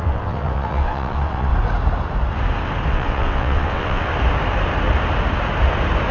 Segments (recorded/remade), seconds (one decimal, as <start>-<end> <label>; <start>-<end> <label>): 0.0-1.5 remade; 1.5-2.9 recorded; 2.9-4.1 remade; 4.1-6.1 recorded